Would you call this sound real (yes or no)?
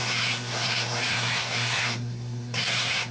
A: no